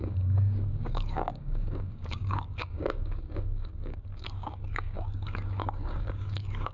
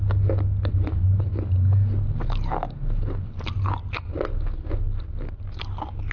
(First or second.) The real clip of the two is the second